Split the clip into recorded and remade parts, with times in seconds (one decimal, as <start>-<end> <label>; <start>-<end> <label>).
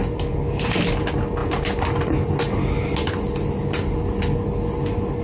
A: 0.0-5.2 recorded